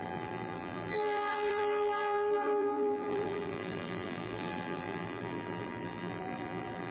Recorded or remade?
remade